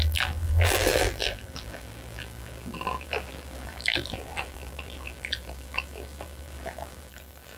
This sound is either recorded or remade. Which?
remade